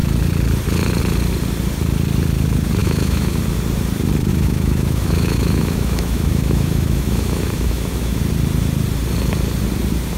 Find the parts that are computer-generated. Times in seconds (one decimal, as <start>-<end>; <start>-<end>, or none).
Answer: 2.8-3.4; 4.3-8.2